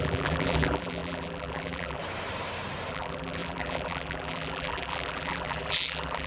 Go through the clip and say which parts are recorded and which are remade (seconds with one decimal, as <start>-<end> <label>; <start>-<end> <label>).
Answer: 0.0-2.0 remade; 2.0-2.9 recorded; 2.9-6.3 remade